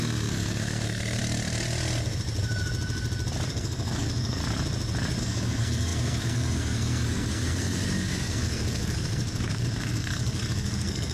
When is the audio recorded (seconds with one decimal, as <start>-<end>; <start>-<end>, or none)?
1.2-3.5; 4.4-5.2